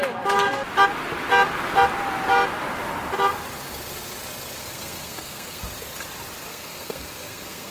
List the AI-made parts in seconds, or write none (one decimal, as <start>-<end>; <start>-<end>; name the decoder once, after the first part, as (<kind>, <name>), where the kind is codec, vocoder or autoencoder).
4.6-5.6 (codec, SNAC); 6.5-7.7